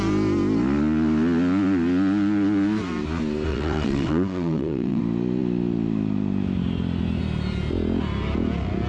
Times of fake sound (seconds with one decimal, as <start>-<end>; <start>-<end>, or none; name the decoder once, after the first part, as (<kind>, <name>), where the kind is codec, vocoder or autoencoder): 3.5-5.0 (vocoder, WaveNeXt)